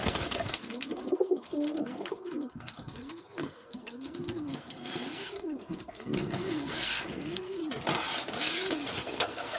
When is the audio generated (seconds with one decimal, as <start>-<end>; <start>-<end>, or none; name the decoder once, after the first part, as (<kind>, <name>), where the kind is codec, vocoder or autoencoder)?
0.0-7.6 (codec, SNAC); 8.4-9.6